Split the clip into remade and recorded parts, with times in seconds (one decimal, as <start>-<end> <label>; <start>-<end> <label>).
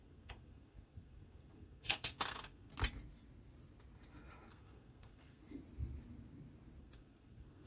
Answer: 0.0-2.7 remade; 2.7-4.5 recorded; 4.5-5.4 remade; 5.4-6.8 recorded; 6.8-7.7 remade